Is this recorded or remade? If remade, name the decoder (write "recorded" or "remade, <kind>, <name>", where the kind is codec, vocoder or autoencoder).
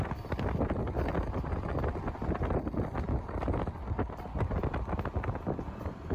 recorded